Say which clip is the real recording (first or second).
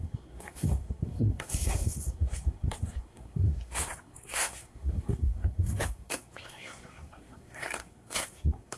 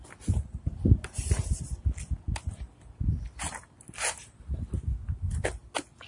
second